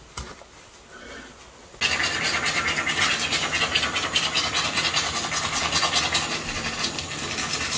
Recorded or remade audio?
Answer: recorded